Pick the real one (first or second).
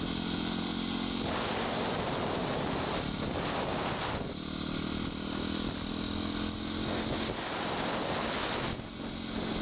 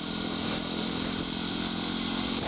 first